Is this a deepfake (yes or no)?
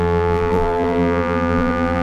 yes